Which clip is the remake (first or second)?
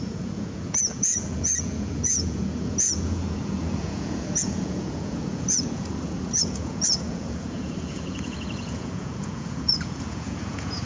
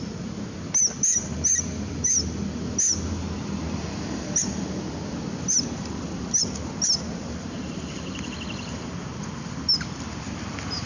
first